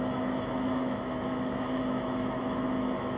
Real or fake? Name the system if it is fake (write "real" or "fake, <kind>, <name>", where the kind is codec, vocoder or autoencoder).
fake, autoencoder, DAC-VAE